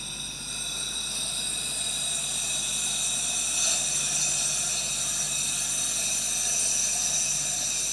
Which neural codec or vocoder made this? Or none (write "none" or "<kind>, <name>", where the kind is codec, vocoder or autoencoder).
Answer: none